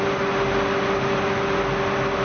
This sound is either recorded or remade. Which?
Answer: recorded